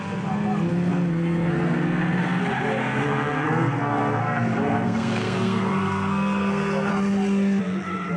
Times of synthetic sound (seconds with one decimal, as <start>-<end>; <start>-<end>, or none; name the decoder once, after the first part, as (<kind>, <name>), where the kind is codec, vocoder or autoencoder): 0.7-2.4 (codec, SNAC); 2.8-6.9